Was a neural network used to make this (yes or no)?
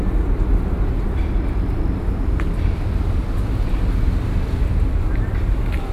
no